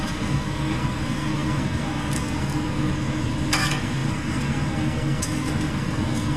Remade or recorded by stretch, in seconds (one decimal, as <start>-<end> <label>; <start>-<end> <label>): 0.0-6.4 remade